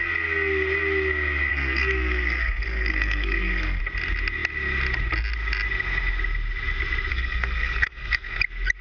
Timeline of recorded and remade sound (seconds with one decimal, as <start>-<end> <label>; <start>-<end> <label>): 0.0-1.5 recorded; 1.5-3.8 remade; 3.8-7.1 recorded; 7.1-8.4 remade; 8.4-8.8 recorded